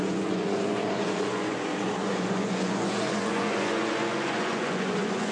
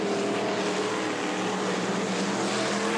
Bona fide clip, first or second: second